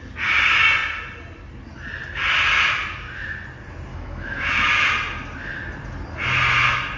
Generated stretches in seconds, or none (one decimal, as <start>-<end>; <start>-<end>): 3.9-4.9